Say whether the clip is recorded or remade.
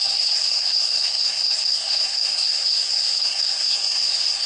remade